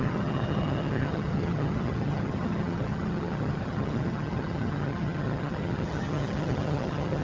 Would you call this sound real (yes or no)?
no